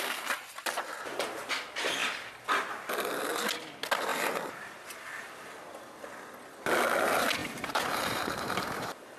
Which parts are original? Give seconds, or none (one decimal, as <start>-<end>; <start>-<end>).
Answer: 0.0-2.0; 2.7-4.1; 5.3-7.4